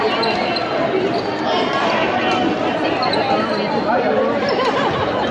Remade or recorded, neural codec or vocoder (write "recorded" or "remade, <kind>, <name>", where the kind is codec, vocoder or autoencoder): recorded